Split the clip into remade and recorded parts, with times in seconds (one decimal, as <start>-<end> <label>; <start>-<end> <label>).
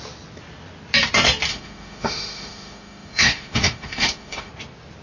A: 0.0-1.5 recorded; 1.5-4.5 remade; 4.5-5.0 recorded